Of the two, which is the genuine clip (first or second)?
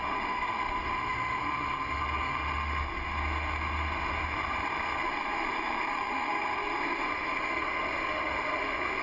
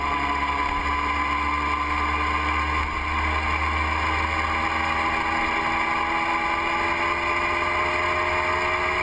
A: second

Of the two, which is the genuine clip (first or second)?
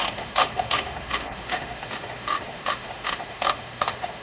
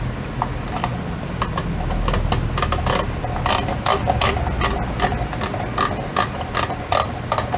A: second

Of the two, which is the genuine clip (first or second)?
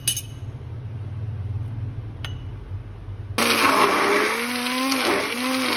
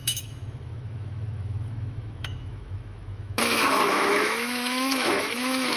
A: first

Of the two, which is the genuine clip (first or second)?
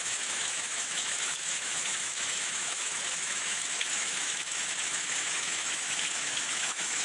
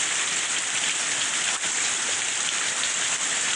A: second